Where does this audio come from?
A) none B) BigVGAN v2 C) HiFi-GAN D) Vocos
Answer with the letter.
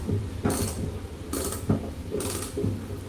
B